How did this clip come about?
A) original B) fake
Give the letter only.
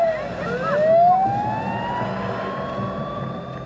A